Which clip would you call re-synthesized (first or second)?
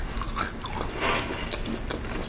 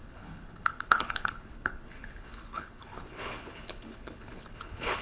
second